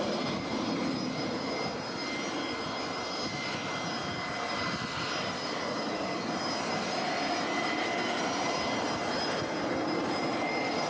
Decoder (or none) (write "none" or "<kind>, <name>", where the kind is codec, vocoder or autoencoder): vocoder, BigVGAN v2